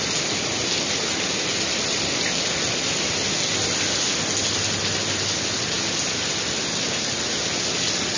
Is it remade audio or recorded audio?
recorded